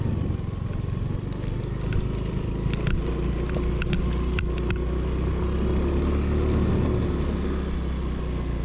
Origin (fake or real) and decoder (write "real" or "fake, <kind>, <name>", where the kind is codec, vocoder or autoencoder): real